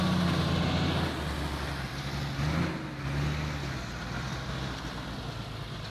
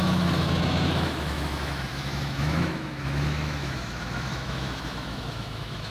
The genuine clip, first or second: first